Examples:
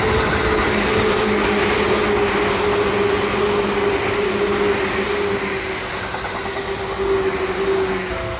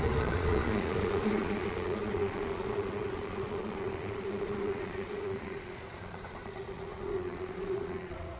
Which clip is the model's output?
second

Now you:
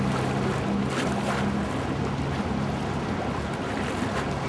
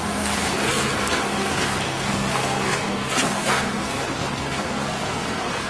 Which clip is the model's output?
second